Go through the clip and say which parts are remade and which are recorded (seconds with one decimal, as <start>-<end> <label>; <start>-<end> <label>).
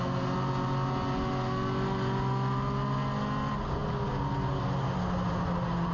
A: 0.0-5.9 recorded